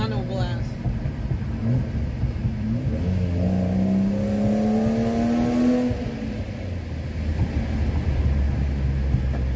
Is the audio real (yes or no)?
yes